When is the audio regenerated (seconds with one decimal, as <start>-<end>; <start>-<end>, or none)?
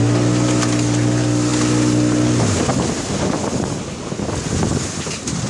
none